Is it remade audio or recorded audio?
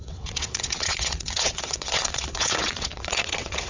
remade